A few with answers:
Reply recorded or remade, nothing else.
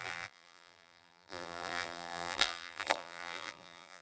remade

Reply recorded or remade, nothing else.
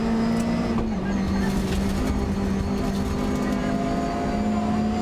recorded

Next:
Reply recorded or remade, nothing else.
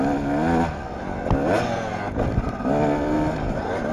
recorded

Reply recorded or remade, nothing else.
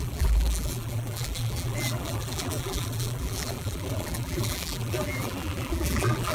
remade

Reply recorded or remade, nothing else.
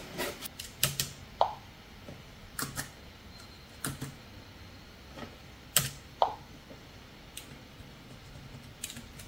recorded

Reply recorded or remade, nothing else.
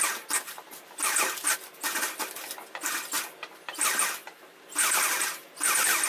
recorded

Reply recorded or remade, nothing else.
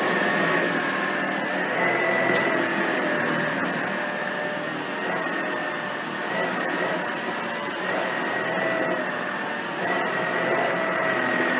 recorded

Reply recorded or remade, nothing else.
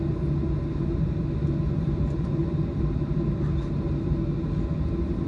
recorded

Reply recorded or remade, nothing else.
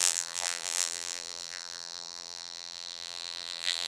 remade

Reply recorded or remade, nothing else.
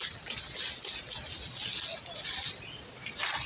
recorded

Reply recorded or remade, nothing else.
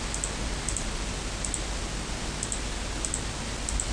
recorded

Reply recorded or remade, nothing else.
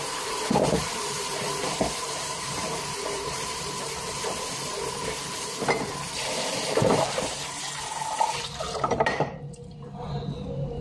remade